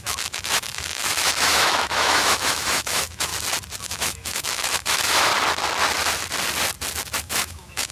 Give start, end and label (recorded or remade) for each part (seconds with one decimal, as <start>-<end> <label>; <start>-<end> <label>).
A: 0.0-3.3 remade; 3.3-3.8 recorded; 3.8-5.3 remade; 5.3-7.2 recorded; 7.2-7.9 remade